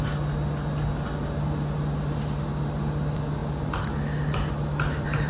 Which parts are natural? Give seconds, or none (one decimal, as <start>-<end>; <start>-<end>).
0.0-5.3